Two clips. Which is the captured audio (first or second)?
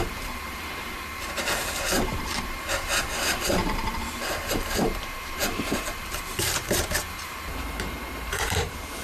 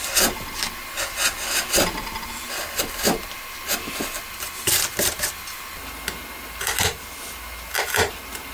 second